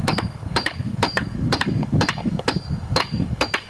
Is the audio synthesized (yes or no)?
yes